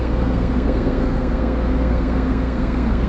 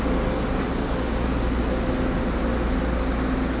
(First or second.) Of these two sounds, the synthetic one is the first